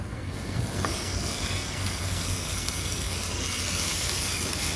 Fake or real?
fake